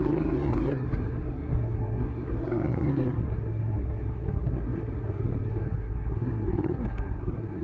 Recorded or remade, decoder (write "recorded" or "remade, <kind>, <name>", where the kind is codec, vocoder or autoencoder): remade, codec, SNAC